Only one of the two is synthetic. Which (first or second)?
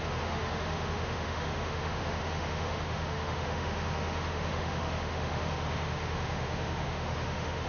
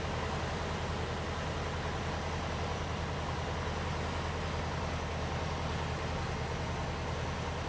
first